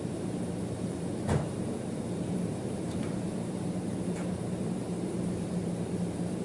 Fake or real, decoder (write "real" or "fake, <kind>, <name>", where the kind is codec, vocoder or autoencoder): fake, vocoder, BigVGAN v2